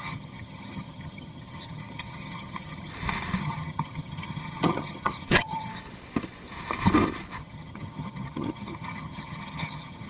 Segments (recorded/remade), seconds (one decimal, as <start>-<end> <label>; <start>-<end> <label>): 0.0-2.9 remade; 2.9-3.4 recorded; 3.4-5.7 remade; 5.7-7.4 recorded; 7.4-10.1 remade